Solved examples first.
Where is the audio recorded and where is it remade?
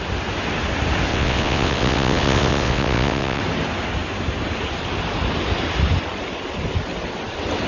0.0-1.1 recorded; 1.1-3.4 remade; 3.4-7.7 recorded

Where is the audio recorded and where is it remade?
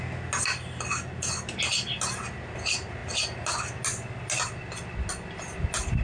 0.0-6.0 recorded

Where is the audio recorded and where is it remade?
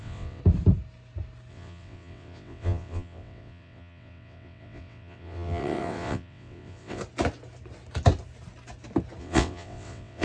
0.0-0.4 remade; 0.4-1.5 recorded; 1.5-7.0 remade; 7.0-9.2 recorded; 9.2-10.2 remade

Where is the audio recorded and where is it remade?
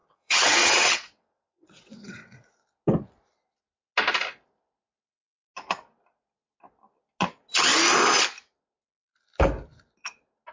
0.0-2.4 remade; 2.4-10.5 recorded